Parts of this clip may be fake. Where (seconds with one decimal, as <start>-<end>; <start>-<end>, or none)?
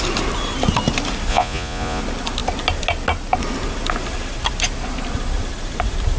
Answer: 1.3-2.0